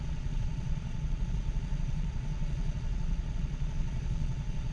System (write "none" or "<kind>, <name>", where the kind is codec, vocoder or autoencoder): vocoder, Vocos